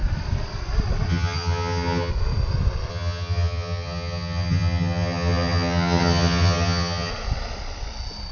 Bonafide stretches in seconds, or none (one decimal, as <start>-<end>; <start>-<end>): 0.0-1.1; 2.1-2.9; 7.1-8.3